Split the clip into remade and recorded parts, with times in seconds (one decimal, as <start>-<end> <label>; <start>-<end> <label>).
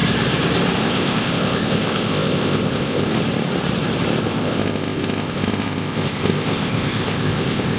0.0-0.8 recorded; 0.8-3.1 remade; 3.1-4.2 recorded; 4.2-7.8 remade